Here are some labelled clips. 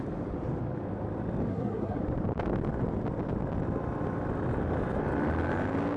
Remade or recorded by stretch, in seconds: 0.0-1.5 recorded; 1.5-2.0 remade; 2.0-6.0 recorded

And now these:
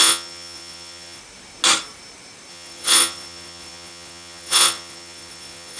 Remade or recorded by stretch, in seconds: 0.0-1.2 remade; 1.2-2.5 recorded; 2.5-5.8 remade

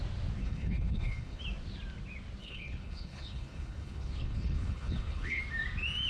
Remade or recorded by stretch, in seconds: 0.0-0.4 recorded; 0.4-1.4 remade; 1.4-2.4 recorded; 2.4-5.4 remade; 5.4-6.1 recorded

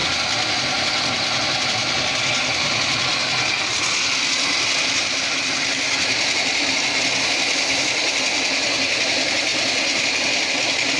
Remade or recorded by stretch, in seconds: 0.0-5.0 recorded; 5.0-5.9 remade; 5.9-11.0 recorded

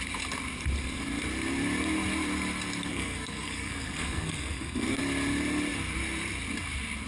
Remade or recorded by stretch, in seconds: 0.0-2.9 recorded; 2.9-5.0 remade; 5.0-7.1 recorded

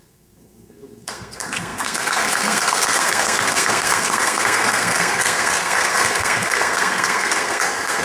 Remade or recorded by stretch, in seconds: 0.0-8.0 remade

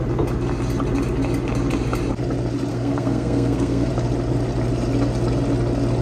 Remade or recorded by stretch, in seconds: 0.0-2.7 recorded; 2.7-3.9 remade; 3.9-6.0 recorded

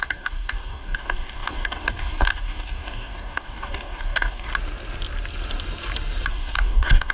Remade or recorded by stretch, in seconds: 0.0-4.5 remade; 4.5-6.3 recorded; 6.3-7.1 remade